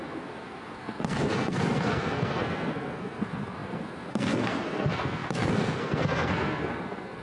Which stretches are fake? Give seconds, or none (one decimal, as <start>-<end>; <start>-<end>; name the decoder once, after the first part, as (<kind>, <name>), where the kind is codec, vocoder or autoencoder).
0.0-7.2 (codec, SNAC)